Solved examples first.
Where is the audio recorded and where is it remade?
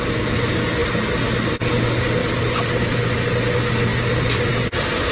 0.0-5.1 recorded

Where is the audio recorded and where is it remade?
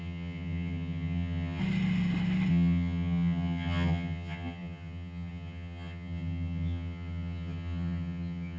0.0-1.6 remade; 1.6-2.5 recorded; 2.5-8.6 remade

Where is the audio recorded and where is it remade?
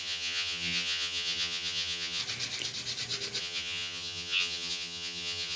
0.0-2.2 remade; 2.2-3.4 recorded; 3.4-5.6 remade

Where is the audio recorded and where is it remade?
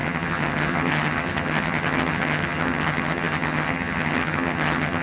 0.0-5.0 remade